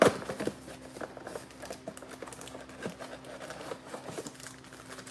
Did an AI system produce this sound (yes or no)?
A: no